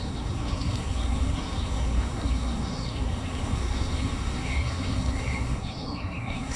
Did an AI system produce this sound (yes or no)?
yes